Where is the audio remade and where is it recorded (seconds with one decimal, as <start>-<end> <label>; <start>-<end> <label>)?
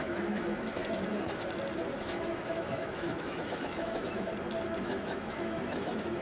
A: 0.0-0.8 remade; 0.8-2.0 recorded; 2.0-4.3 remade; 4.3-4.8 recorded; 4.8-6.2 remade